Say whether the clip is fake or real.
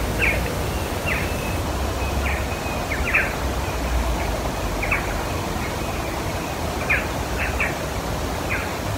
real